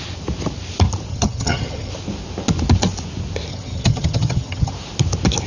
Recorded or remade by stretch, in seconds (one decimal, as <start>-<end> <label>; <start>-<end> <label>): 0.0-1.1 recorded; 1.1-1.9 remade; 1.9-3.5 recorded; 3.5-4.7 remade; 4.7-5.5 recorded